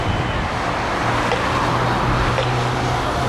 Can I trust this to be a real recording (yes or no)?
yes